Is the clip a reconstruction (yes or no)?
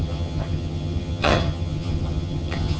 yes